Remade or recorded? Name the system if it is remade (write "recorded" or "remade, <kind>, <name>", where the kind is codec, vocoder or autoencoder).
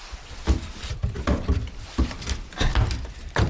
remade, vocoder, BigVGAN v2